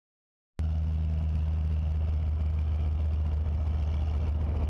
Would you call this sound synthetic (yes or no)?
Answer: no